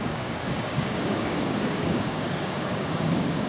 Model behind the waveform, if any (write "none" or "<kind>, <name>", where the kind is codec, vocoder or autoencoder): codec, DAC